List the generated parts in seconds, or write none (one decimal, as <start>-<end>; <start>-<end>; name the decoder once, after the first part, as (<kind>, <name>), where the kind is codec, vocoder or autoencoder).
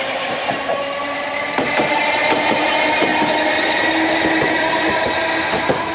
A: 0.0-3.1 (vocoder, BigVGAN v2); 4.6-5.9